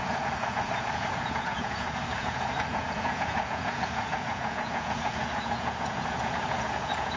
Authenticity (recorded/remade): remade